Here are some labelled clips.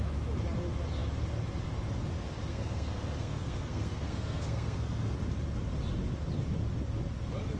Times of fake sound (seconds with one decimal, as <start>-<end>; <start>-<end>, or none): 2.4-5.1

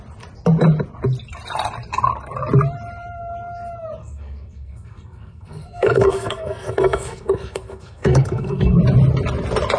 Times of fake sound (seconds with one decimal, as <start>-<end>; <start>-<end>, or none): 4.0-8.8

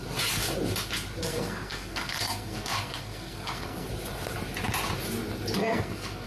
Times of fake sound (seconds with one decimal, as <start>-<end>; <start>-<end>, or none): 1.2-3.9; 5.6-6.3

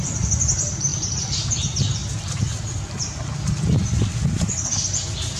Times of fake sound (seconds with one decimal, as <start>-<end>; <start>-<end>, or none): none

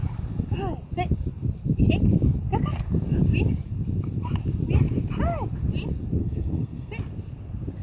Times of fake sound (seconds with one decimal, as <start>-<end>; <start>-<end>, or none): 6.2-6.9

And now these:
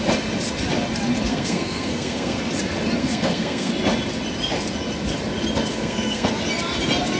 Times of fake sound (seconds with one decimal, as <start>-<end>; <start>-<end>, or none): 1.3-2.5; 3.0-3.7; 5.7-6.3

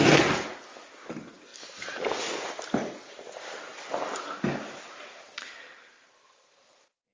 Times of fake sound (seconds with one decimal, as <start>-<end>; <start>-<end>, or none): none

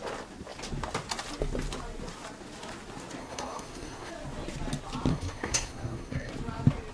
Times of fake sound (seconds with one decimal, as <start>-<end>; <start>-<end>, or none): 3.2-4.1; 5.1-6.3